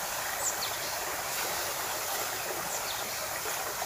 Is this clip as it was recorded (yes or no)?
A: yes